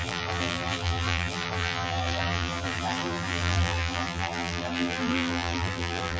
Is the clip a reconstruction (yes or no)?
yes